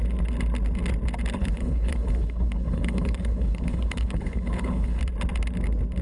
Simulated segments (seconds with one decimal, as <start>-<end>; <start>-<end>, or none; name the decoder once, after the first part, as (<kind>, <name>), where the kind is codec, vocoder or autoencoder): 1.4-5.0 (codec, HILCodec)

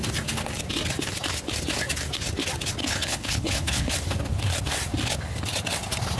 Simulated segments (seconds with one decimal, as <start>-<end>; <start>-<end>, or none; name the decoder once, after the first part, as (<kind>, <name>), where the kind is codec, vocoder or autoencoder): 2.8-3.9 (codec, HILCodec)

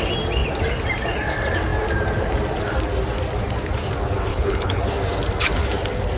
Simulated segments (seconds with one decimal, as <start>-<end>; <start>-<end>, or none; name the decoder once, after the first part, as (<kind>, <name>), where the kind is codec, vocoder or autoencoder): 4.3-4.8 (codec, HILCodec)

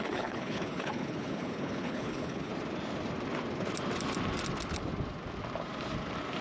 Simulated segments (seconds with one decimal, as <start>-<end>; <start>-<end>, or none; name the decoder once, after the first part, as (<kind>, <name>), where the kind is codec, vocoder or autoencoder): 0.0-2.5 (codec, HILCodec)

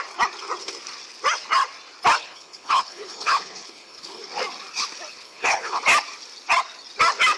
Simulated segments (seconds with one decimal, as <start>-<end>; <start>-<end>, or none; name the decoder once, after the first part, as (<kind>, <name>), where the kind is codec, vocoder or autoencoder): 2.2-4.2 (codec, HILCodec); 5.1-5.8